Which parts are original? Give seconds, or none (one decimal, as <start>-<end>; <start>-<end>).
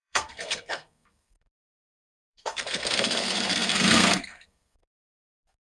none